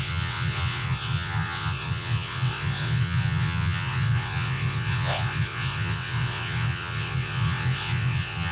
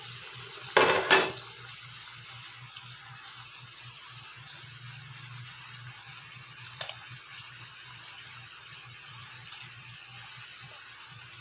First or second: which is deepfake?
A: first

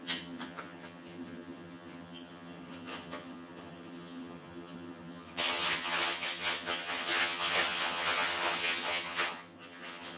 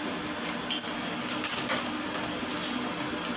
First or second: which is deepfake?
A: first